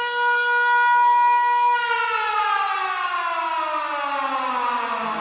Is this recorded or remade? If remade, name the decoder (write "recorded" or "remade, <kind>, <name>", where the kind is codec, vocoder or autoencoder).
recorded